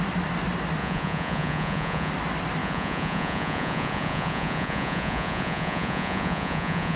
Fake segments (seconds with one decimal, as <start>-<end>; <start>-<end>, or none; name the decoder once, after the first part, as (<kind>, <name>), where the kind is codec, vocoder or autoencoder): 0.8-2.1 (vocoder, Vocos); 2.6-7.0